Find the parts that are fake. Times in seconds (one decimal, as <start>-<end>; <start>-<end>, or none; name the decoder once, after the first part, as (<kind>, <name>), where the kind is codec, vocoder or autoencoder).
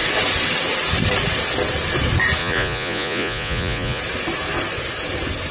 2.4-4.0 (vocoder, Vocos)